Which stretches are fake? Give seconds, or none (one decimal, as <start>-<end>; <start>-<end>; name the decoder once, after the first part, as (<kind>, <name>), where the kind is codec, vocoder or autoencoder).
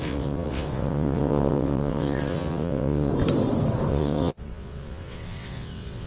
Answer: 0.0-3.1 (vocoder, WaveNeXt); 3.9-6.1